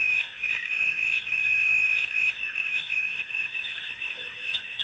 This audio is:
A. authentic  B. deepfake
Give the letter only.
B